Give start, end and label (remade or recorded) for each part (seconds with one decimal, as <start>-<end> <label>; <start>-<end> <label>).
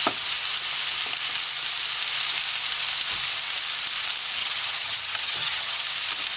0.0-4.4 recorded; 4.4-5.8 remade; 5.8-6.4 recorded